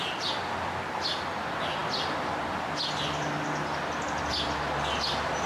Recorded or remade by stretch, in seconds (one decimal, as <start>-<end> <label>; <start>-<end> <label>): 0.0-5.5 recorded